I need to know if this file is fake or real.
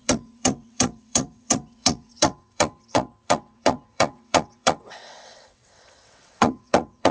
fake